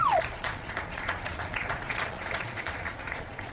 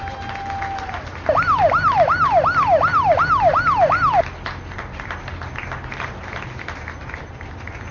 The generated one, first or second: first